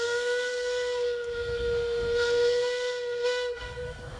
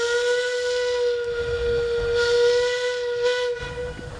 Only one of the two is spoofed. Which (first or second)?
first